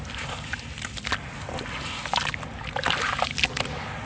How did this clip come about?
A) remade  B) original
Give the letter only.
B